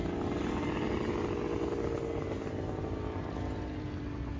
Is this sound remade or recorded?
recorded